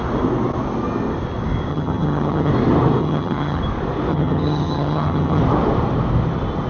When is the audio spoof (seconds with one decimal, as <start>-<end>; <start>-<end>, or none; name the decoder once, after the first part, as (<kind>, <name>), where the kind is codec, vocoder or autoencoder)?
1.7-2.5 (vocoder, HiFi-GAN); 3.0-3.6; 4.1-5.4